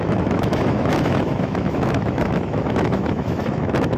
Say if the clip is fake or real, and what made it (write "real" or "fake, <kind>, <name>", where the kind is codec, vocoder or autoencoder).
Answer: fake, autoencoder, DAC-VAE